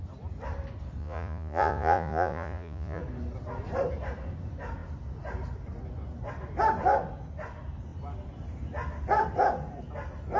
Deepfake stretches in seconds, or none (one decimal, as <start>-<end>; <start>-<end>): 1.0-3.0